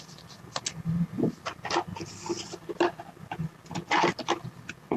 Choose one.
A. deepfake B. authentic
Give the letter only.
B